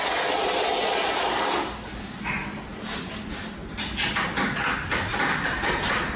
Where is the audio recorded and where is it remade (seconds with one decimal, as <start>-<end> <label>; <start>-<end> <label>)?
0.0-6.2 recorded